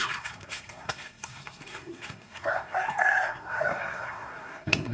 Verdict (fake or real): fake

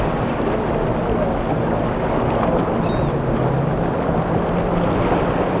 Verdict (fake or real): real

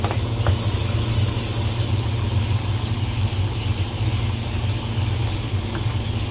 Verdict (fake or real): real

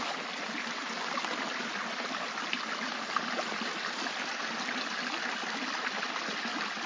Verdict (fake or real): real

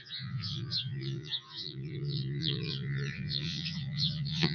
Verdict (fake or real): fake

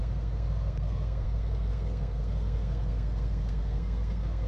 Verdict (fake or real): fake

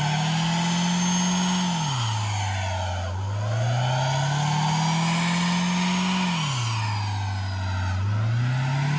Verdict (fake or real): real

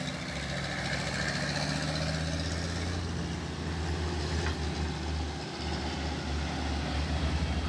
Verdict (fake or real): real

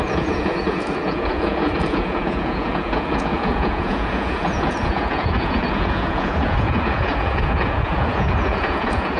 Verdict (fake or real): fake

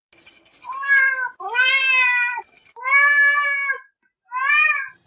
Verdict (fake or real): real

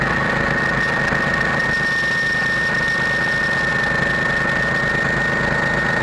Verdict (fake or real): real